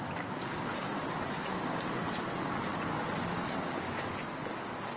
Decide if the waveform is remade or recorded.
recorded